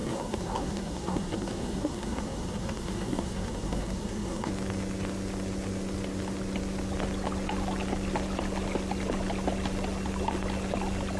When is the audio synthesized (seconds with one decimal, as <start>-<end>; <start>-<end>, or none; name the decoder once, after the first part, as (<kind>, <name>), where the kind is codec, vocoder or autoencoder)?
0.0-4.5 (codec, SNAC)